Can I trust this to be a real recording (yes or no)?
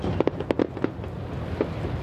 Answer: yes